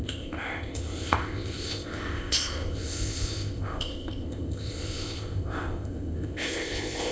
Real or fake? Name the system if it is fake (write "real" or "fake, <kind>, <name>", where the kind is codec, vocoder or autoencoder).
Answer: fake, codec, ZipCodec